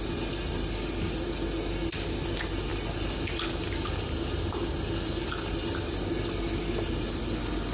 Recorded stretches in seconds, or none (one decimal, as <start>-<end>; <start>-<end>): 0.0-7.7